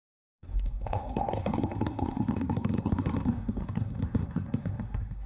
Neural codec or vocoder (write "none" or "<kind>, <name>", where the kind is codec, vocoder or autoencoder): codec, SNAC